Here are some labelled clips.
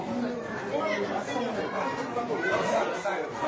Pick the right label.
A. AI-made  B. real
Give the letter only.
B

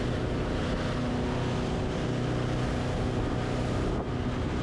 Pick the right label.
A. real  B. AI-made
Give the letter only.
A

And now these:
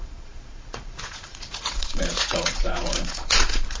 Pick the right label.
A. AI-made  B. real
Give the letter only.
A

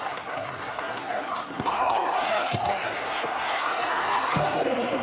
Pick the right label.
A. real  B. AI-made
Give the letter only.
B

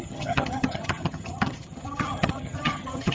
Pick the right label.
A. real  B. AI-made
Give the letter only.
B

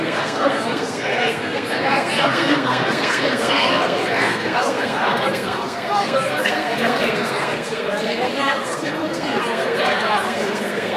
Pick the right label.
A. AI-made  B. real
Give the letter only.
A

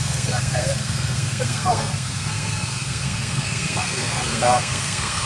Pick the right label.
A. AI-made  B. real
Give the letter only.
A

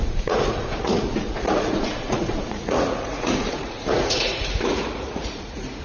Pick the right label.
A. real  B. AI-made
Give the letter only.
B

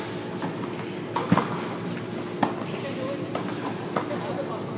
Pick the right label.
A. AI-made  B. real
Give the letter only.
B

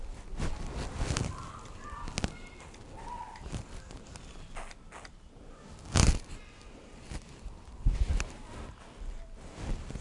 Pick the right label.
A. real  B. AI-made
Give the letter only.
A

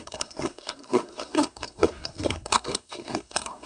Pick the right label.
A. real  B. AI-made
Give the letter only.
B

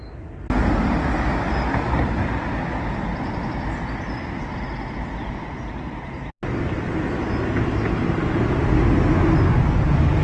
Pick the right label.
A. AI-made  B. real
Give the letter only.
B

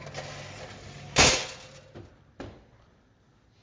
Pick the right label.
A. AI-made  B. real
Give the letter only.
B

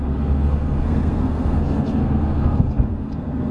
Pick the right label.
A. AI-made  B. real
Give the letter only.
A